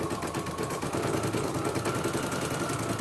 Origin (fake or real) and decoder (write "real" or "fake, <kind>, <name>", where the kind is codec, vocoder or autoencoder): real